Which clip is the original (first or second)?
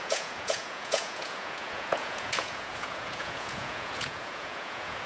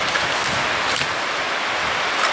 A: second